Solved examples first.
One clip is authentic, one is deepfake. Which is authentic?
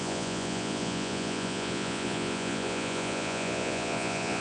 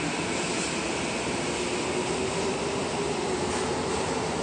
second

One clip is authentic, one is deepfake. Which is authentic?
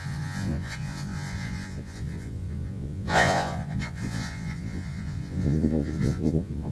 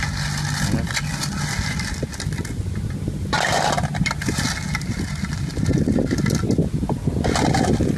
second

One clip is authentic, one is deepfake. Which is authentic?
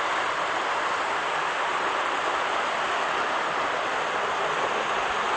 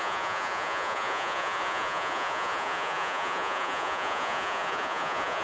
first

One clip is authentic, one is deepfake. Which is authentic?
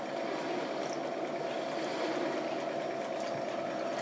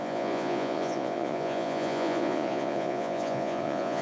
first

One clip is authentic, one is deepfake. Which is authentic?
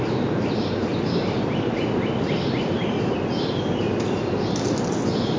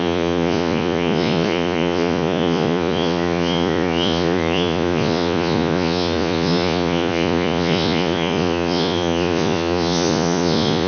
first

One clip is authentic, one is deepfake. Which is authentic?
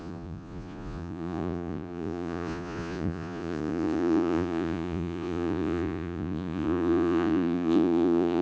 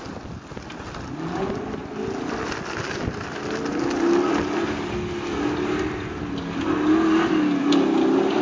second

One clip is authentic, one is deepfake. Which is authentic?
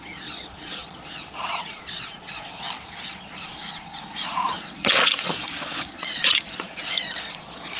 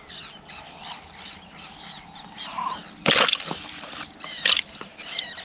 second